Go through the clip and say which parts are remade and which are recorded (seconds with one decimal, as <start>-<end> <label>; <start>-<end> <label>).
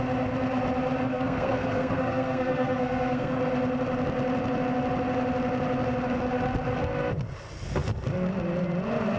0.0-1.1 recorded; 1.1-3.3 remade; 3.3-9.2 recorded